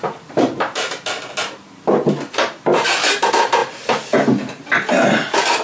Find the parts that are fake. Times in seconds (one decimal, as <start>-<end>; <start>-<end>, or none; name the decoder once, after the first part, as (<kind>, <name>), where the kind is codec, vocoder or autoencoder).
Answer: none